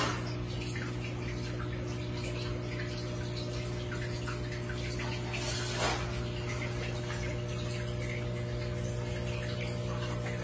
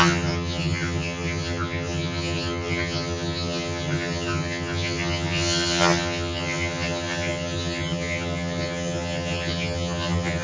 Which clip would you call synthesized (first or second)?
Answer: second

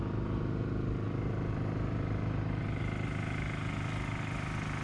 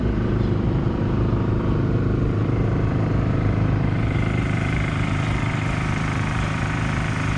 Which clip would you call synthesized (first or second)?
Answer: second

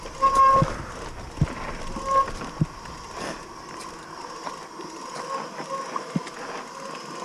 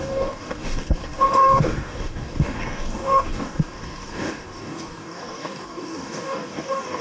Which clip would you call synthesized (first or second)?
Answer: second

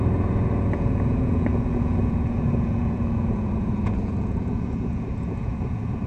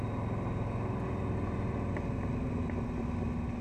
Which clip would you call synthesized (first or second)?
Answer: first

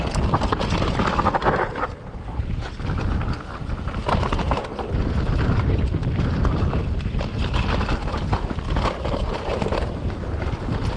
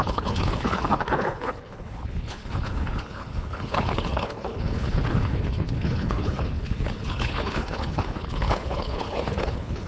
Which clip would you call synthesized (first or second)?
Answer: second